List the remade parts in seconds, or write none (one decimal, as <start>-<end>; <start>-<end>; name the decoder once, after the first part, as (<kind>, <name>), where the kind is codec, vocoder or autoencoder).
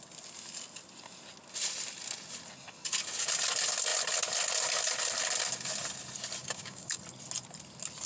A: 6.4-7.0 (codec, DAC)